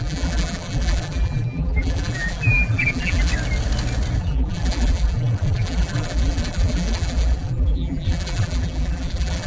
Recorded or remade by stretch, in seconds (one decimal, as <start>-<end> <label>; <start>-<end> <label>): 0.0-3.3 remade; 3.3-4.2 recorded; 4.2-9.5 remade